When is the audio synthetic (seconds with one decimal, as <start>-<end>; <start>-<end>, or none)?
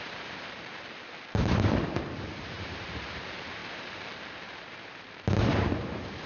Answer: 0.0-6.3